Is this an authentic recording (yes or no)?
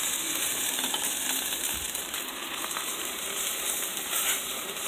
no